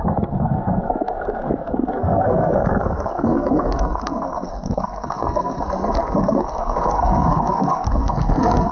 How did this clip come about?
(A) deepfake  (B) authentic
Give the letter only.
A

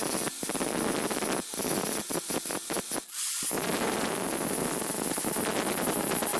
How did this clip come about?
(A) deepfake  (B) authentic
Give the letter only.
B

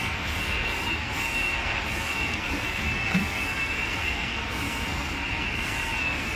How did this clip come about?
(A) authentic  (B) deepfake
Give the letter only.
B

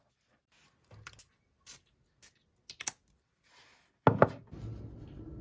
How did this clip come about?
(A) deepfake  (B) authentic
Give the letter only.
B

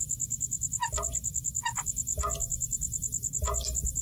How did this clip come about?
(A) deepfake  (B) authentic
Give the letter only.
B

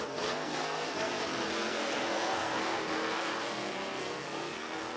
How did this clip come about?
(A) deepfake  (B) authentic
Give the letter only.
A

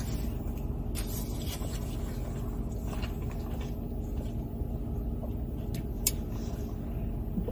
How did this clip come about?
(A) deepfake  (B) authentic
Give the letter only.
B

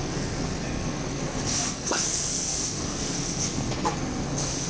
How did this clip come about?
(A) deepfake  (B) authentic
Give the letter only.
A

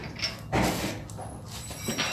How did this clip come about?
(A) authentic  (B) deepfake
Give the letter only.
A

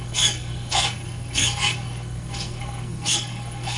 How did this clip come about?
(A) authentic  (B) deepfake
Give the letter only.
B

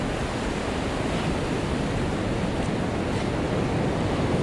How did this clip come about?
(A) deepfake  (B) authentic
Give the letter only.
B